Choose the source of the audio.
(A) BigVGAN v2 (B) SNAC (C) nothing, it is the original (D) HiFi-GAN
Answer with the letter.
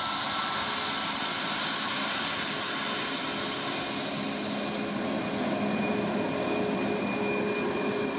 C